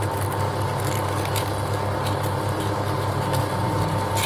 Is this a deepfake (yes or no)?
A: no